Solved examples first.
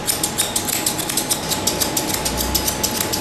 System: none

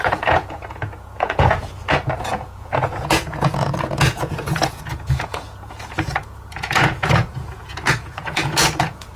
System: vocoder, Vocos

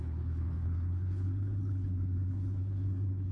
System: codec, HILCodec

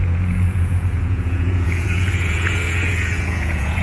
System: vocoder, Vocos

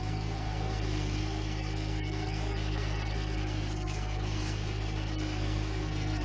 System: codec, SNAC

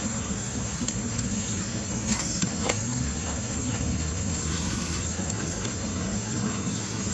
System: codec, SNAC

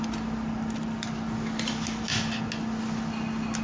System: none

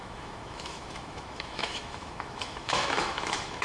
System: autoencoder, DAC-VAE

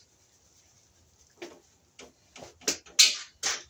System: none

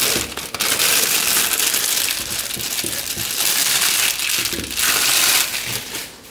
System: none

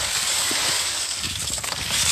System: codec, DAC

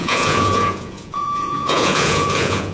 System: vocoder, Vocos